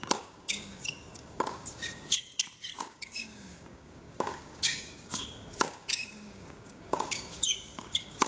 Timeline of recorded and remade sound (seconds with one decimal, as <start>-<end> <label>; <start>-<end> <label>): 0.0-2.3 remade; 2.3-2.8 recorded; 2.8-8.3 remade